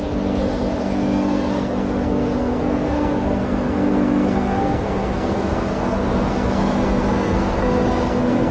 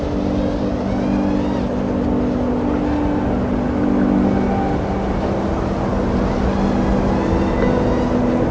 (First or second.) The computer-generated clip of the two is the first